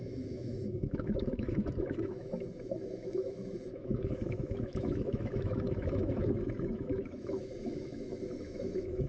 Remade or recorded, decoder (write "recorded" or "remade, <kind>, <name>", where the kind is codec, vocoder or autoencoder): remade, autoencoder, DAC-VAE